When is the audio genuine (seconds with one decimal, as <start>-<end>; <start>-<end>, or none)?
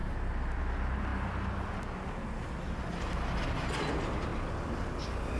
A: 0.6-5.4